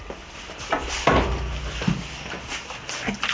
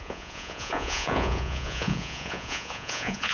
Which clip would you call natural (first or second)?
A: first